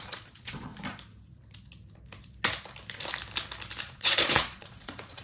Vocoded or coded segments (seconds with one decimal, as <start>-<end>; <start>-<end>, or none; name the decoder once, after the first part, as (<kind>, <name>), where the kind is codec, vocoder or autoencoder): 0.0-0.7 (vocoder, Vocos); 3.8-5.2